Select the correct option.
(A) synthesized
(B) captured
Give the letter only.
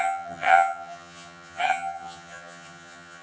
A